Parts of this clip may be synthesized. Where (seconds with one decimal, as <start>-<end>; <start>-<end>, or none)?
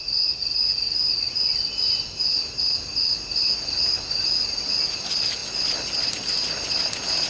none